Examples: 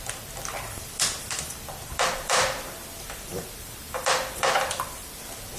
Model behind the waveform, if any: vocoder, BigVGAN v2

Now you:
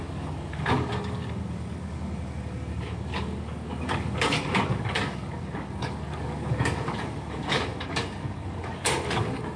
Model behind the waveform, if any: codec, DAC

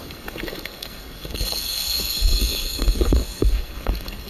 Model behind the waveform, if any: codec, SNAC